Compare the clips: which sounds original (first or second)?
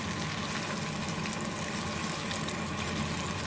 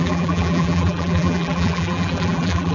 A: first